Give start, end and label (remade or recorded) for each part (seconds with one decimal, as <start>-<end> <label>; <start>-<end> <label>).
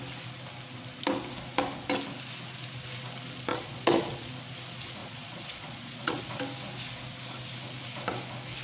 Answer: 0.0-3.5 recorded; 3.5-4.3 remade; 4.3-5.0 recorded; 5.0-6.2 remade; 6.2-8.6 recorded